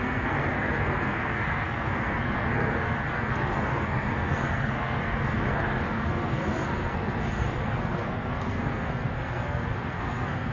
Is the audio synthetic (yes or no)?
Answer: yes